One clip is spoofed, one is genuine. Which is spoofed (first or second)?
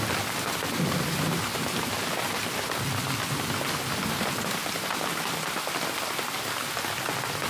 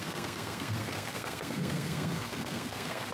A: second